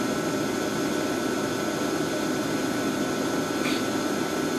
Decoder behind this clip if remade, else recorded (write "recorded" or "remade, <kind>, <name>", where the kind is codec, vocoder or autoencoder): recorded